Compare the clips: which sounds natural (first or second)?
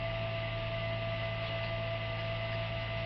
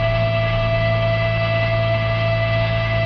first